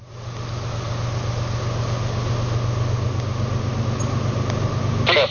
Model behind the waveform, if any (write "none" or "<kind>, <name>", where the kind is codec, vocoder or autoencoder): none